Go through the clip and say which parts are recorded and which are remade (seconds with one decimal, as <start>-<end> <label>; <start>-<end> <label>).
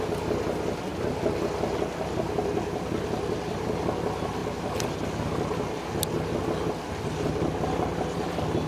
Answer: 0.0-8.7 recorded